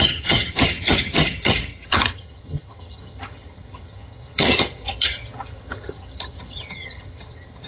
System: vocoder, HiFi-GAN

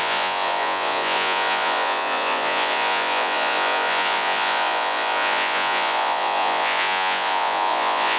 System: vocoder, Vocos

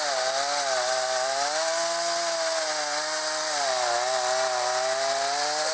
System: none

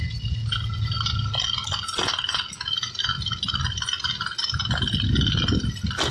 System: none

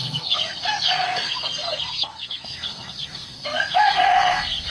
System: codec, SNAC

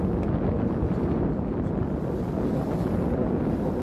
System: none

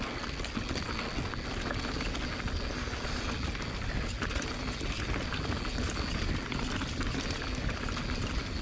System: none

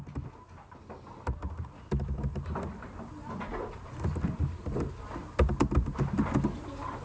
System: none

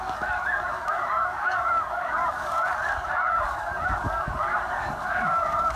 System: codec, DAC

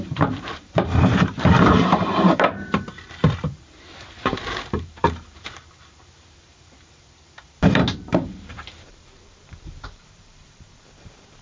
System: vocoder, BigVGAN v2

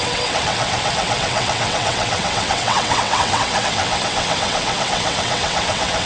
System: vocoder, WaveNeXt